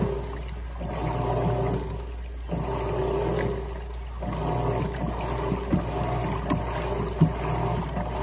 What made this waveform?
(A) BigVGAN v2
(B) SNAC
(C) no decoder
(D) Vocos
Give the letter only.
C